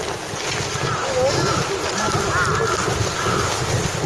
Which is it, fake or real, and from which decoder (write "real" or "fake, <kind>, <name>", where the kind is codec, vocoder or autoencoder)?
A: real